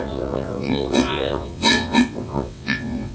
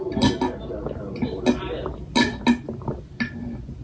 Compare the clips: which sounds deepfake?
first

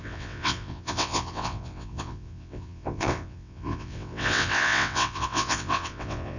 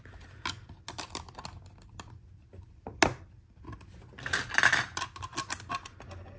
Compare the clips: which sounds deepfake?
first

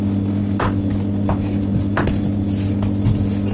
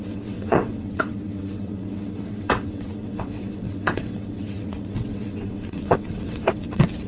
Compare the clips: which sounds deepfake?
second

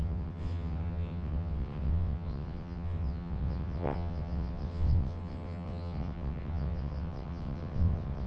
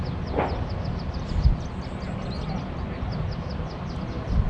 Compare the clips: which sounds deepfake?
first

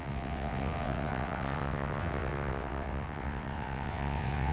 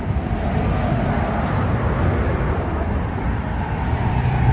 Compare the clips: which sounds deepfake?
first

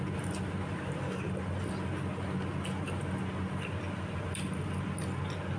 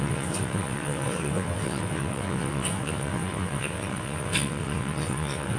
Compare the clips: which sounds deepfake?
second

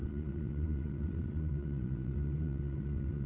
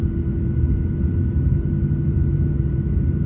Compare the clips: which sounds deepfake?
first